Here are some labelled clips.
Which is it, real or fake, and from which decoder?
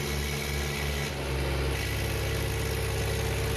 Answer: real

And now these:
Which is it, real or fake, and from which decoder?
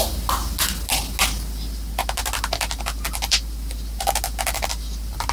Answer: real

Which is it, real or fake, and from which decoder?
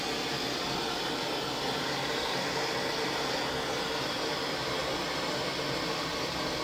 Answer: real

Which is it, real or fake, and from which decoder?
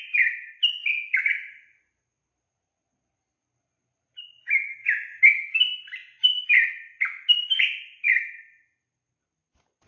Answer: real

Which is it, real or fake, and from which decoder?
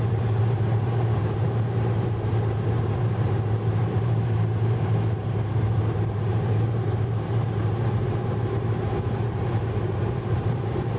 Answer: fake, vocoder, BigVGAN v2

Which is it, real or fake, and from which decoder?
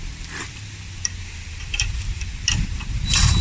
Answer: fake, vocoder, BigVGAN v2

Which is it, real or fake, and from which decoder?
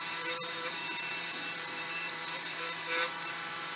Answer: fake, vocoder, BigVGAN v2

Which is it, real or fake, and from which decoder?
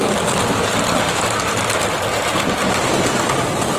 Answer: real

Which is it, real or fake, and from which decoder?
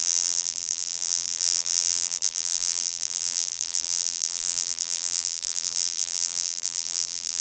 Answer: fake, vocoder, BigVGAN v2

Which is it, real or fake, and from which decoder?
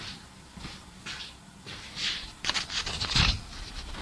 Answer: fake, vocoder, BigVGAN v2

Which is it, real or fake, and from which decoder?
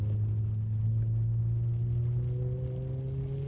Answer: real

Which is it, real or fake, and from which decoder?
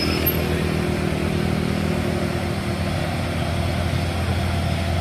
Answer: real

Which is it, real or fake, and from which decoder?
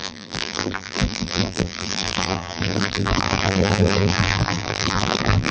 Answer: fake, vocoder, BigVGAN v2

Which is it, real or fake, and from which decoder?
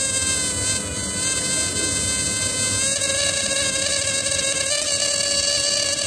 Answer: real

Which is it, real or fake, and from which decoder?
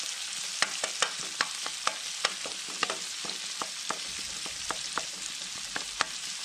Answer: real